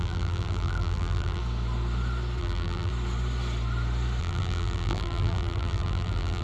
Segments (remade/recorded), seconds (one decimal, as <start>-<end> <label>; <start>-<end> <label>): 0.0-1.4 remade; 1.4-2.4 recorded; 2.4-2.9 remade; 2.9-4.2 recorded; 4.2-6.4 remade